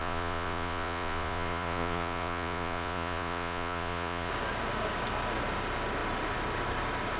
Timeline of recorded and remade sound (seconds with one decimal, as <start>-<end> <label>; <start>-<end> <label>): 0.0-4.3 remade; 4.3-7.2 recorded